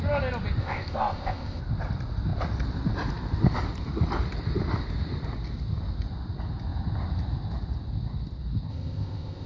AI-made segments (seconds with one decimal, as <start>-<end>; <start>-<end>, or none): 0.6-1.6; 8.7-9.5